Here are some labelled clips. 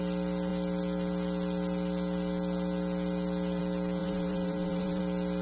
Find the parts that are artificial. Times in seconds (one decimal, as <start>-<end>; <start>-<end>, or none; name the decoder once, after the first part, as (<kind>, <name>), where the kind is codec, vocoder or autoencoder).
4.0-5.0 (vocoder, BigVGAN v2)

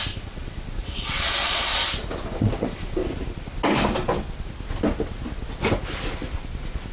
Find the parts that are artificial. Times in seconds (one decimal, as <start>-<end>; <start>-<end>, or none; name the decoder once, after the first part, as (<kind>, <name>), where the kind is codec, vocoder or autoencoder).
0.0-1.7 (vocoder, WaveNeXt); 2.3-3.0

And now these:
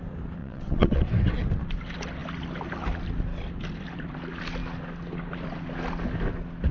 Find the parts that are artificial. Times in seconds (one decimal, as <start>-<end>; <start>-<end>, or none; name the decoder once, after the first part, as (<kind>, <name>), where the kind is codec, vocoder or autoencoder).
0.4-1.1 (vocoder, WaveNeXt)